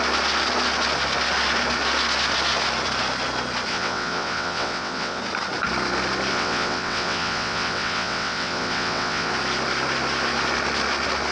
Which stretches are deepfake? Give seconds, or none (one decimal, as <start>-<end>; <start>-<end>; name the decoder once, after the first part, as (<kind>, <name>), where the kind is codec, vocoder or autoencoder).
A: 3.7-5.2 (vocoder, WaveNeXt); 6.3-9.3